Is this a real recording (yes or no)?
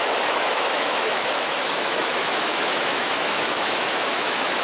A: no